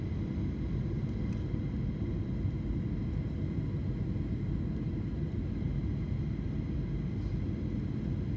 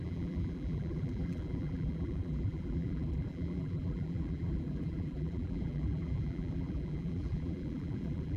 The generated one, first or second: second